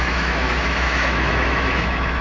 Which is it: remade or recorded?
remade